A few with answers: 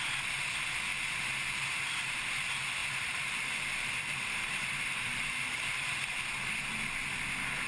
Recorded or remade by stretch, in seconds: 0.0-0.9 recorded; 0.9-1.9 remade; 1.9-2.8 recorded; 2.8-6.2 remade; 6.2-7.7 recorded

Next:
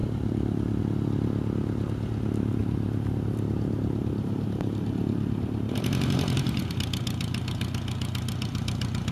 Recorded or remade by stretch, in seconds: 0.0-2.6 recorded; 2.6-6.6 remade; 6.6-9.1 recorded

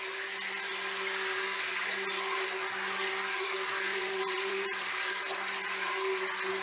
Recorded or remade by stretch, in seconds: 0.0-3.9 recorded; 3.9-5.1 remade; 5.1-6.6 recorded

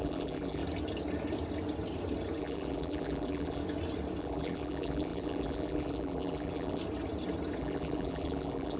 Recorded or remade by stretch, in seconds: 0.0-0.6 remade; 0.6-2.4 recorded; 2.4-3.6 remade; 3.6-4.2 recorded; 4.2-6.8 remade; 6.8-7.6 recorded; 7.6-8.8 remade